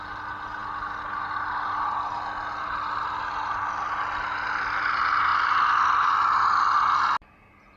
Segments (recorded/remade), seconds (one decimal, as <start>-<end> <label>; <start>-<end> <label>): 0.0-5.3 recorded; 5.3-6.1 remade; 6.1-7.8 recorded